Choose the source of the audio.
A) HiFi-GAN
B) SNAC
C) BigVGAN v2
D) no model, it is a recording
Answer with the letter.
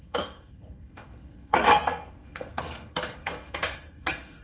B